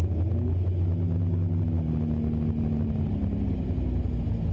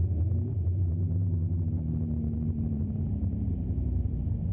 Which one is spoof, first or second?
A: second